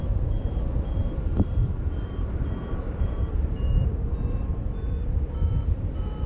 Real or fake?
fake